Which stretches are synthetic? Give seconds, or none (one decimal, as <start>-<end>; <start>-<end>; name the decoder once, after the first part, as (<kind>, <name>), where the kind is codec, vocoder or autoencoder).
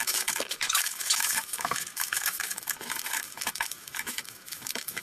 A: 0.0-5.0 (autoencoder, DAC-VAE)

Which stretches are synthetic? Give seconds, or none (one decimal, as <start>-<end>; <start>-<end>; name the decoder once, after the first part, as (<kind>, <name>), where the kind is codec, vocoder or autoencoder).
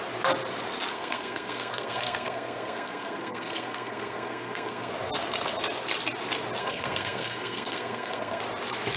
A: 0.9-4.9 (codec, SNAC); 6.6-8.4